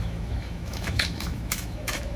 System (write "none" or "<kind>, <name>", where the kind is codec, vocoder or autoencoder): autoencoder, DAC-VAE